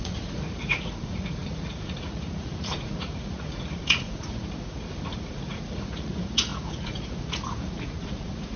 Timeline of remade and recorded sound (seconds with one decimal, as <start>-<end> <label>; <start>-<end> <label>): 0.0-8.6 remade